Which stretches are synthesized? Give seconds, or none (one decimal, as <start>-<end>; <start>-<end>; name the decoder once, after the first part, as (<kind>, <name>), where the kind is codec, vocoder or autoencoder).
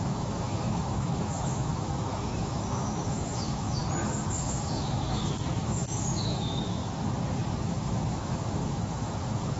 0.0-3.8 (autoencoder, DAC-VAE); 4.4-6.8; 7.6-9.6